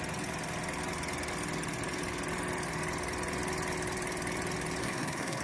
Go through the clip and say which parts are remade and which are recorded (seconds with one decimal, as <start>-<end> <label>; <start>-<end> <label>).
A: 0.0-4.8 recorded; 4.8-5.4 remade